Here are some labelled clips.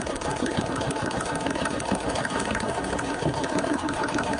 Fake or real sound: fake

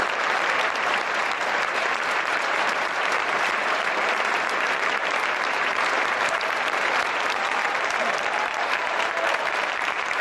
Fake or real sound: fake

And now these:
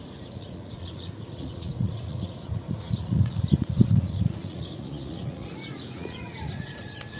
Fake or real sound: fake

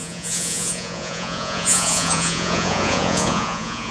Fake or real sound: fake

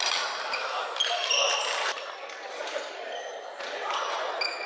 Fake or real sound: real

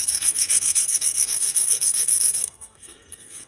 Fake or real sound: fake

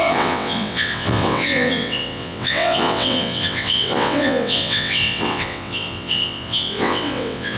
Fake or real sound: fake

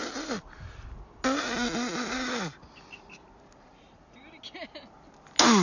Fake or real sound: real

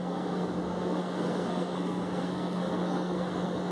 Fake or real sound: fake